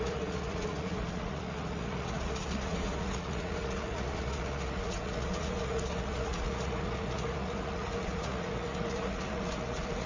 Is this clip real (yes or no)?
no